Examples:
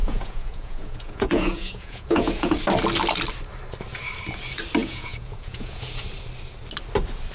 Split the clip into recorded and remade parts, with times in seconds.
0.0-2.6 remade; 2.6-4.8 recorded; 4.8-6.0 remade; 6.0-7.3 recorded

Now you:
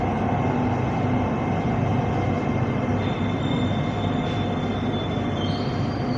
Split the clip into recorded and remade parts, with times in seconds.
0.0-6.2 recorded

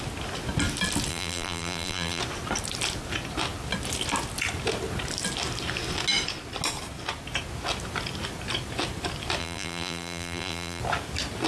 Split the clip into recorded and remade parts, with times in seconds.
0.0-1.1 recorded; 1.1-2.2 remade; 2.2-9.4 recorded; 9.4-10.8 remade; 10.8-11.5 recorded

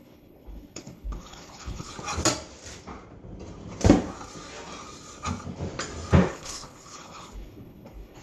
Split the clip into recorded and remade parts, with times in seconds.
0.0-1.9 remade; 1.9-6.3 recorded; 6.3-8.2 remade

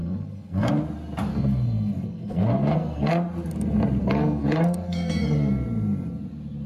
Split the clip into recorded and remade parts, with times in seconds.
0.0-0.7 remade; 0.7-1.3 recorded; 1.3-3.1 remade; 3.1-4.0 recorded; 4.0-5.5 remade; 5.5-6.7 recorded

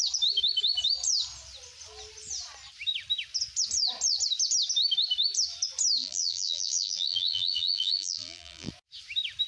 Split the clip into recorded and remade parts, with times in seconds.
0.0-6.0 recorded; 6.0-8.7 remade; 8.7-9.5 recorded